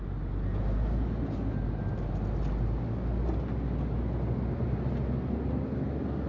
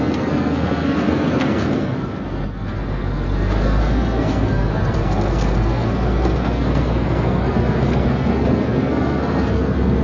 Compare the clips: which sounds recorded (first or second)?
first